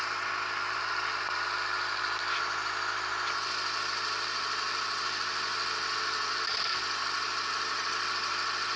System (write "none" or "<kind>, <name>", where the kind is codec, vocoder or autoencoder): none